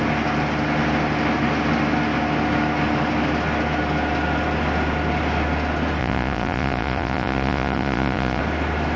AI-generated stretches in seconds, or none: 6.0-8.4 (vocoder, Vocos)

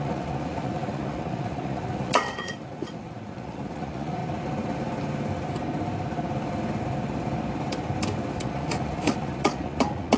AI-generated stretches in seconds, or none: 0.0-4.2 (vocoder, Vocos); 8.4-10.2

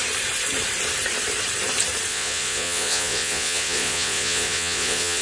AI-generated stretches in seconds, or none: 2.1-5.2 (vocoder, Vocos)

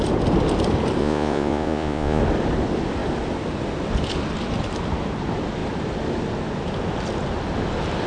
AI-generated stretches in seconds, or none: 1.0-2.2 (vocoder, Vocos)

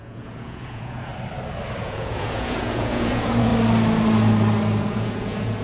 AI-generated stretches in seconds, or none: 0.0-1.1 (vocoder, Vocos); 1.8-3.5; 4.8-5.6

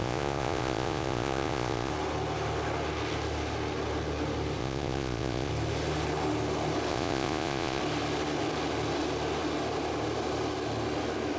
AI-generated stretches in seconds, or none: 0.0-1.9 (vocoder, Vocos); 4.6-5.5; 6.9-7.8